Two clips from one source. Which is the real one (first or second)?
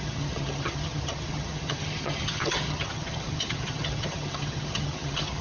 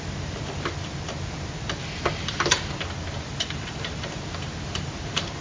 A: second